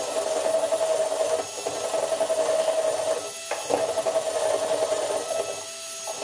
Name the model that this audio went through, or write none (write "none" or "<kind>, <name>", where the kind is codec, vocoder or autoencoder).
none